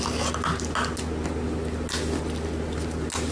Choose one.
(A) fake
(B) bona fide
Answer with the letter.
B